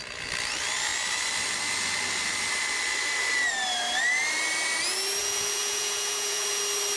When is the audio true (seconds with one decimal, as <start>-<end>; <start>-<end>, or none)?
0.0-5.2; 6.6-7.0